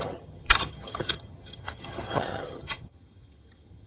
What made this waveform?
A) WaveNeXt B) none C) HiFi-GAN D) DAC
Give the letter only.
C